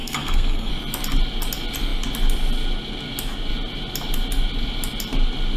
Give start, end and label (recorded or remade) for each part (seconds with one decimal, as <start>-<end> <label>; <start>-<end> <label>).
0.0-0.7 remade; 0.7-5.6 recorded